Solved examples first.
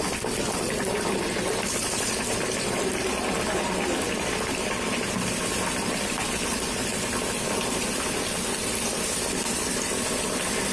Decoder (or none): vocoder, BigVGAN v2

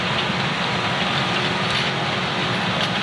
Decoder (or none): none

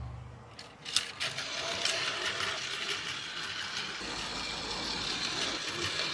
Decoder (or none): none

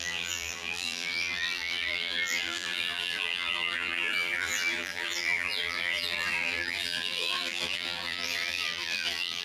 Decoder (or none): vocoder, BigVGAN v2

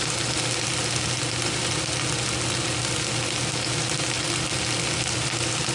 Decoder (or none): none